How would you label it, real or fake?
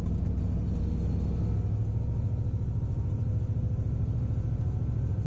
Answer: real